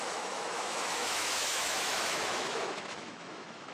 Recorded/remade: remade